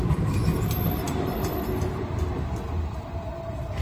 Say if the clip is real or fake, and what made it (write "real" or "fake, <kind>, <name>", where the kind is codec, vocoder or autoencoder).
real